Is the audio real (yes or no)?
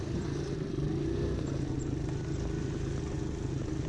yes